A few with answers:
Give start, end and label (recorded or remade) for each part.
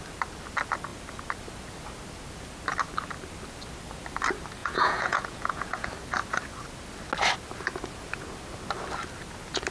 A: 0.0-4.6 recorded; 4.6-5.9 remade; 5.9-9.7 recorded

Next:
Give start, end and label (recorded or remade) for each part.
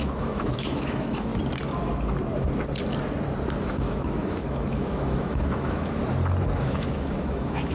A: 0.0-1.3 remade; 1.3-3.7 recorded; 3.7-6.0 remade; 6.0-6.6 recorded; 6.6-7.7 remade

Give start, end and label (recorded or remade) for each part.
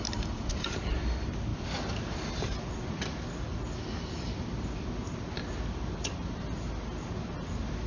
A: 0.0-7.9 recorded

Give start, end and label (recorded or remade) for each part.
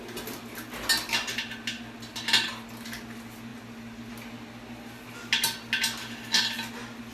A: 0.0-7.1 recorded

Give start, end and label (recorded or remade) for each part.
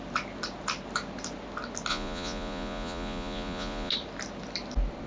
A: 0.0-1.9 recorded; 1.9-3.9 remade; 3.9-5.1 recorded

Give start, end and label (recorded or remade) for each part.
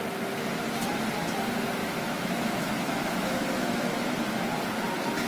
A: 0.0-1.8 recorded; 1.8-4.0 remade; 4.0-5.3 recorded